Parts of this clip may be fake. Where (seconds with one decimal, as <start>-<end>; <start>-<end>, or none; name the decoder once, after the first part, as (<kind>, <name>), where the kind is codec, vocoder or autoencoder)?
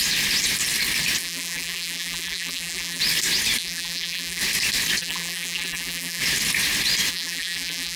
1.2-3.0 (vocoder, BigVGAN v2); 3.6-4.4; 5.0-6.2; 7.1-8.0